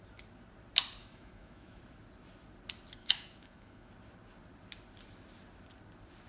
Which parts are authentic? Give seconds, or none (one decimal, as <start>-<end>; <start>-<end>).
0.0-1.0; 1.8-3.0; 3.9-6.3